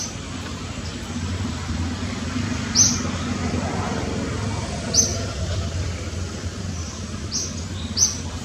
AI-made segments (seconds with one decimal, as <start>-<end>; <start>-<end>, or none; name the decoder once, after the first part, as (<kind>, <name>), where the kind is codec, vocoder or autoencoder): 5.1-7.3 (vocoder, BigVGAN v2)